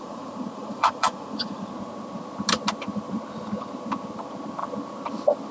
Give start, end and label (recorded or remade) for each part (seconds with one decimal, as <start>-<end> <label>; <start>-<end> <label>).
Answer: 0.0-1.7 remade; 1.7-5.5 recorded